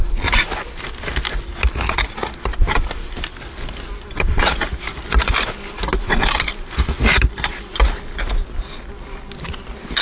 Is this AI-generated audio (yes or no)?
no